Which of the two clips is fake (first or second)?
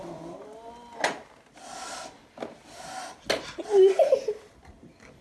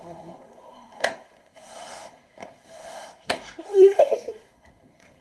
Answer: second